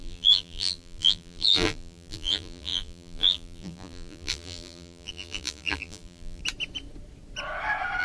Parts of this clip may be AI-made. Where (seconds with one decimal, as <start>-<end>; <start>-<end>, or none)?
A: 0.0-6.4